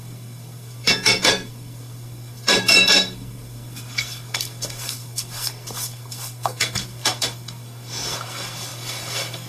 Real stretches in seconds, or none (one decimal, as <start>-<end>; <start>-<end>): none